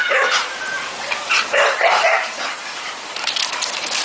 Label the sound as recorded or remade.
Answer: remade